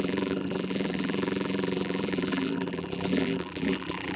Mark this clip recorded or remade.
remade